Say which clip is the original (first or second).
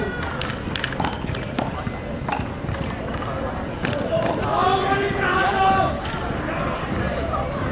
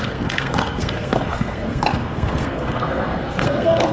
first